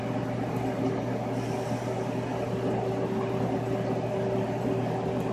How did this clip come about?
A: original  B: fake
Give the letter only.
A